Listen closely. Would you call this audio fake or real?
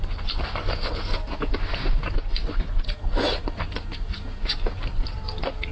real